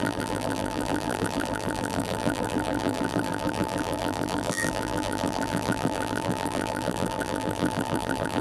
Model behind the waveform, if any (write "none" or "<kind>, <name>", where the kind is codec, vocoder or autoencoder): vocoder, BigVGAN v2